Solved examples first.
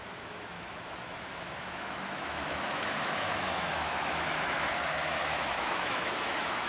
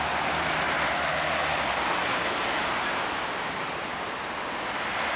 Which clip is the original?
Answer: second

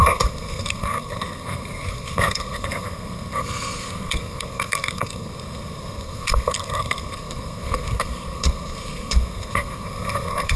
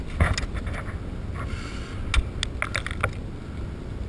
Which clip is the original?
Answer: second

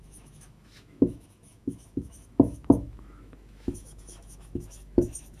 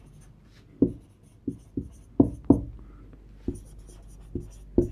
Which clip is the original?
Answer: second